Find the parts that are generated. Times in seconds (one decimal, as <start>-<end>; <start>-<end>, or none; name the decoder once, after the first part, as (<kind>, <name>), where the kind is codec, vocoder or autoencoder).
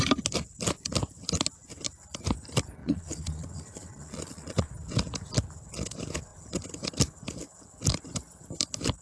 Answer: 2.8-4.7 (vocoder, Vocos)